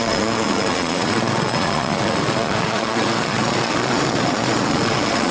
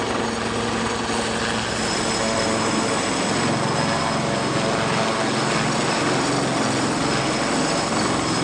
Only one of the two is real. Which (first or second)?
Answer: second